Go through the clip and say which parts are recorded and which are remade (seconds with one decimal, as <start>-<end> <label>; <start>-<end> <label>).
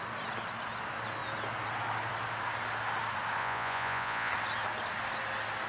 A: 0.0-3.4 recorded; 3.4-4.3 remade; 4.3-5.7 recorded